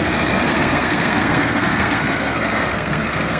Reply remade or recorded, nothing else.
remade